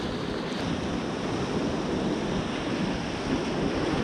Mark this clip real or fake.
real